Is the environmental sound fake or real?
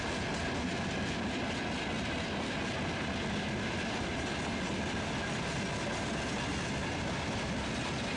real